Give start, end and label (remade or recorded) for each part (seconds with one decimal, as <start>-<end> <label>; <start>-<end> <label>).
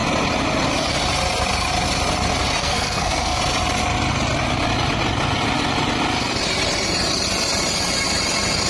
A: 0.0-2.6 recorded; 2.6-3.4 remade; 3.4-8.7 recorded